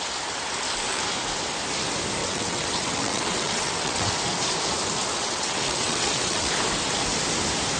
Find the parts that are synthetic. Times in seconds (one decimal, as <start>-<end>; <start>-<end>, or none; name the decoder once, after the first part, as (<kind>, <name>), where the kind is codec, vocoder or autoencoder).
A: 2.2-4.1 (vocoder, WaveNeXt); 5.2-6.5